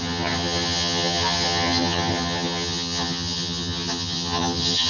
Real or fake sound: fake